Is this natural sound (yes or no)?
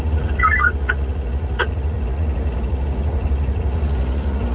no